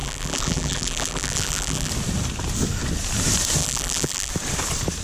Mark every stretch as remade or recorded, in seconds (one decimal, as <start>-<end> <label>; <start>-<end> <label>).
0.0-1.9 remade; 1.9-3.6 recorded; 3.6-4.3 remade; 4.3-5.0 recorded